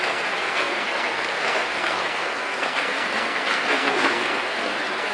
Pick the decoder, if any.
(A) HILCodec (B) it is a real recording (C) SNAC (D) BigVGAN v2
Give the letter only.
C